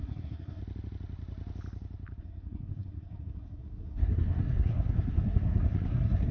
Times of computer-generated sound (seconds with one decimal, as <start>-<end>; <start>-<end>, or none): 0.0-0.6; 2.2-6.3